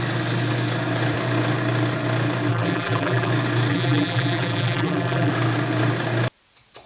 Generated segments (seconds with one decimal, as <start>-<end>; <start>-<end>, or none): 2.5-3.3; 3.7-5.3